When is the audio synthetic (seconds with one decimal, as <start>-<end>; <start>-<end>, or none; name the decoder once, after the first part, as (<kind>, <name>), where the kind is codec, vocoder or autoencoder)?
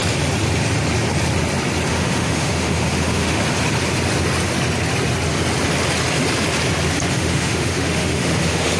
1.9-3.4 (autoencoder, DAC-VAE); 7.1-8.8